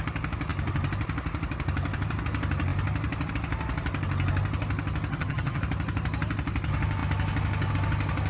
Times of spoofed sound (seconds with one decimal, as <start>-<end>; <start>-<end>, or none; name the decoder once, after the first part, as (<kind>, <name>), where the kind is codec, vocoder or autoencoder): 5.1-5.6 (vocoder, HiFi-GAN)